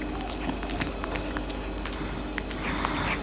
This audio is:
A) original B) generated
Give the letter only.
A